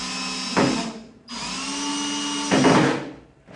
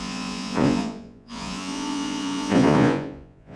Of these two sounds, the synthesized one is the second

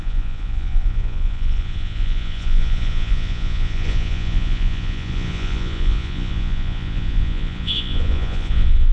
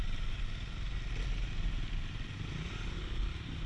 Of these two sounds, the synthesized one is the first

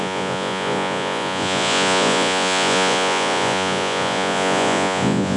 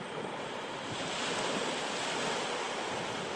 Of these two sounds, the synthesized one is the first